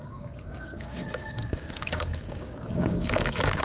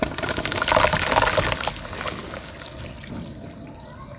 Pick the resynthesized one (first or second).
first